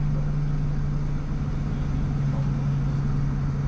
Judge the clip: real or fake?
real